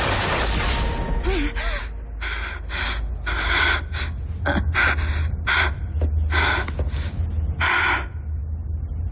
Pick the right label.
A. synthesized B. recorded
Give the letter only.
B